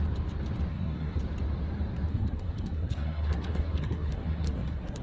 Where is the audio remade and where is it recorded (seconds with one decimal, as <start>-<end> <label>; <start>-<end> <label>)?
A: 0.0-0.7 recorded; 0.7-1.2 remade; 1.2-2.1 recorded; 2.1-5.0 remade